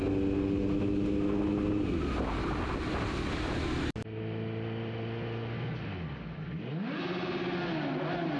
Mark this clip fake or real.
real